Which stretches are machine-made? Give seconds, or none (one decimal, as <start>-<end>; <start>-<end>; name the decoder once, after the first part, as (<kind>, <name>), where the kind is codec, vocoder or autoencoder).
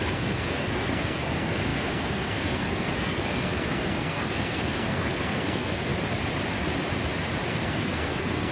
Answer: 0.0-5.9 (codec, SNAC); 7.5-8.5